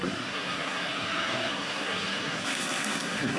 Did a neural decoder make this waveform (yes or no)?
yes